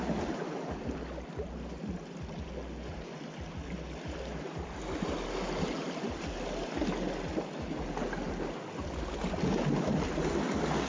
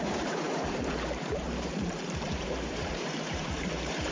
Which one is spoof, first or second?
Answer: second